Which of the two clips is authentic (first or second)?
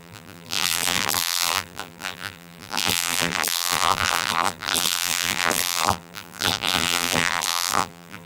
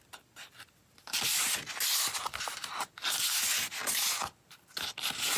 second